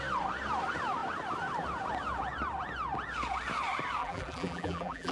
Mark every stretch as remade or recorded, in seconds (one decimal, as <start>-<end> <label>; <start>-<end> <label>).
0.0-4.0 recorded; 4.0-5.1 remade